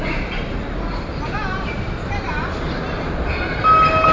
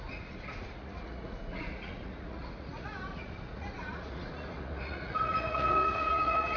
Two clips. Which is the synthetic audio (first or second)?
second